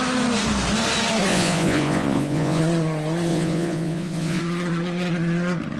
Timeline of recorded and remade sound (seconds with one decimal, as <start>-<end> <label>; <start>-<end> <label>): 0.0-1.3 recorded; 1.3-2.6 remade; 2.6-3.3 recorded; 3.3-4.4 remade; 4.4-5.8 recorded